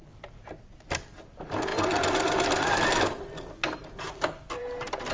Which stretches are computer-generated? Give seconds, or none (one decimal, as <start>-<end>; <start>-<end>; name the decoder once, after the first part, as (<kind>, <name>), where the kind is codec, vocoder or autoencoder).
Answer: none